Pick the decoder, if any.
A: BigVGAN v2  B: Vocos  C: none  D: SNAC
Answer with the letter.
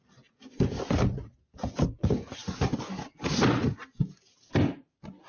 C